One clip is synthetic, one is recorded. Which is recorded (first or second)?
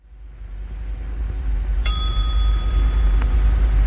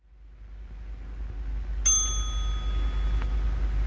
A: second